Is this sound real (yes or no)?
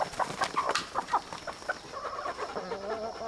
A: yes